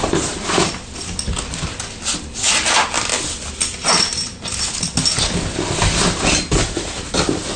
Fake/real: real